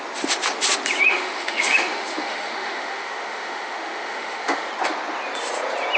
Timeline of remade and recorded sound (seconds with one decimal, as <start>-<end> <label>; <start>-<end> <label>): 0.0-1.1 recorded; 1.1-4.7 remade; 4.7-6.0 recorded